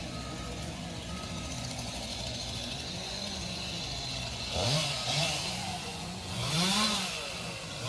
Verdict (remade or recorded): remade